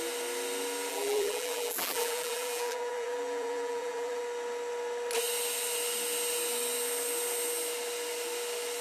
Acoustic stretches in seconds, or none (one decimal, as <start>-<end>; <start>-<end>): 0.0-0.9; 4.2-8.8